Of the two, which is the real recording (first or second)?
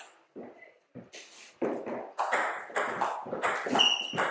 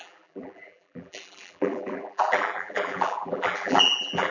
first